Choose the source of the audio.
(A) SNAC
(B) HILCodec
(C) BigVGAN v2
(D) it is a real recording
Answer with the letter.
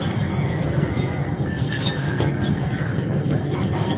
A